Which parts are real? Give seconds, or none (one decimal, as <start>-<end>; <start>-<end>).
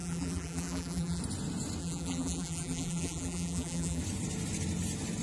1.2-1.8; 4.0-5.2